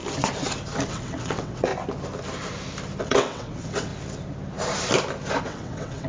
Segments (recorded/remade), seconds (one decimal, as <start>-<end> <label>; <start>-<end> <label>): 0.0-0.9 recorded; 0.9-1.7 remade; 1.7-3.0 recorded; 3.0-3.9 remade; 3.9-5.4 recorded; 5.4-6.1 remade